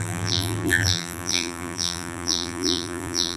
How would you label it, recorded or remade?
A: remade